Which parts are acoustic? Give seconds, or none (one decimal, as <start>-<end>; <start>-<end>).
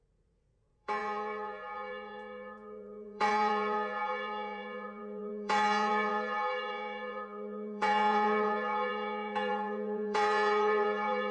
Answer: none